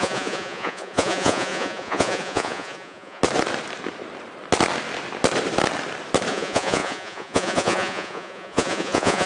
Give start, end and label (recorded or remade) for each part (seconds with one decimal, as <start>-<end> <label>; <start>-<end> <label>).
0.0-3.2 remade; 3.2-6.3 recorded; 6.3-9.3 remade